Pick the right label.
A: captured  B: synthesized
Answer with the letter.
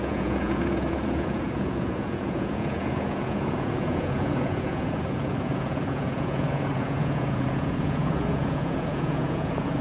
B